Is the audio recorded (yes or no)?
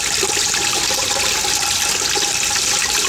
yes